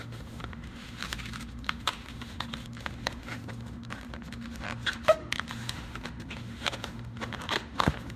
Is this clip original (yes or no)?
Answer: no